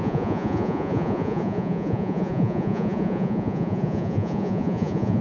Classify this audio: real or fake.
fake